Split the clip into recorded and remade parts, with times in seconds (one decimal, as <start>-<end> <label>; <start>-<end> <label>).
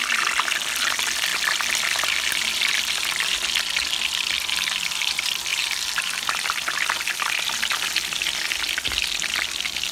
0.0-5.5 recorded; 5.5-6.5 remade; 6.5-9.9 recorded